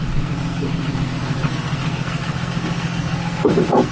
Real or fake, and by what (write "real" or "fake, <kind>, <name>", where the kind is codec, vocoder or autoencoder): fake, codec, SNAC